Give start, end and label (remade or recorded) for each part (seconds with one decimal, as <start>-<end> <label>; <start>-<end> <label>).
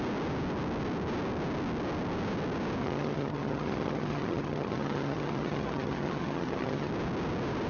0.0-2.8 recorded; 2.8-6.9 remade; 6.9-7.7 recorded